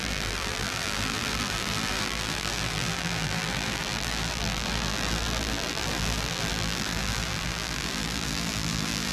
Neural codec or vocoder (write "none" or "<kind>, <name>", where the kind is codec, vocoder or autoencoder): vocoder, BigVGAN v2